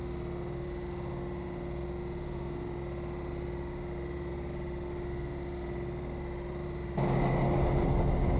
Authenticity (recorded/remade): recorded